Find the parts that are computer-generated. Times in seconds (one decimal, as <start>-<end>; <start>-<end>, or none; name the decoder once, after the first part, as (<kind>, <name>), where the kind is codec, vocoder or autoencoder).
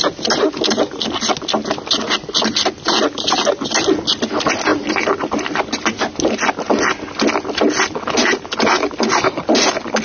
none